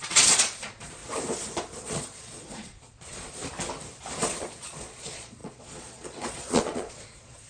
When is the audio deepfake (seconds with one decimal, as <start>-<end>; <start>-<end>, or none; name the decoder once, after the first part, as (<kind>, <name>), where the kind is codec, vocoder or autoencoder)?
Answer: 0.0-1.0 (vocoder, Vocos); 1.8-3.4; 4.2-7.5